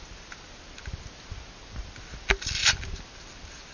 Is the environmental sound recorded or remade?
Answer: recorded